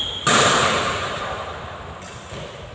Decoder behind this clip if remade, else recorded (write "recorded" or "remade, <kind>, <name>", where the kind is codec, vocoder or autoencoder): recorded